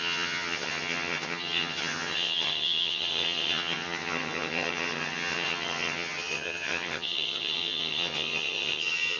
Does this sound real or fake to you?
fake